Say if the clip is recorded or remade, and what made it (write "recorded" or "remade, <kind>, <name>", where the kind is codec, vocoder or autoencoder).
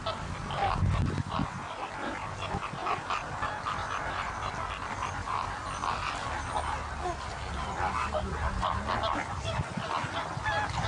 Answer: recorded